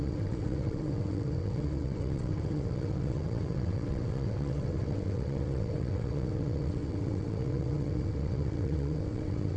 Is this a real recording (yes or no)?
no